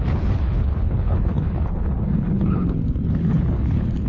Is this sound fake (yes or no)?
yes